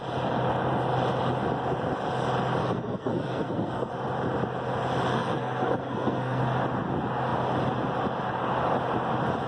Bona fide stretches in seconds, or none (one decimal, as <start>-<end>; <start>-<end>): 0.0-2.6; 3.9-5.1; 6.4-9.5